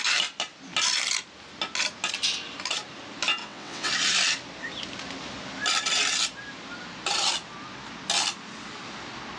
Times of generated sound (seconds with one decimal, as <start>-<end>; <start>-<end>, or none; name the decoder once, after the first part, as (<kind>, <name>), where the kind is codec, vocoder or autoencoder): 3.4-3.9 (vocoder, WaveNeXt)